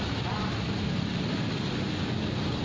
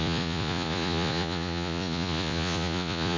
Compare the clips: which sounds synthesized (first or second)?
second